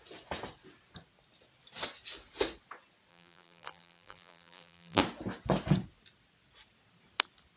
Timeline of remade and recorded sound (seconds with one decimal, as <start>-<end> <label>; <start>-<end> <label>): 0.0-3.1 recorded; 3.1-5.0 remade; 5.0-7.6 recorded